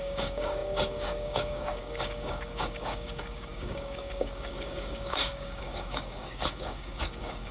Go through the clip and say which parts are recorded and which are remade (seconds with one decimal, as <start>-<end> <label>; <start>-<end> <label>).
0.0-7.5 remade